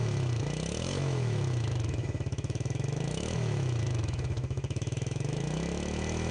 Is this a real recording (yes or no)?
no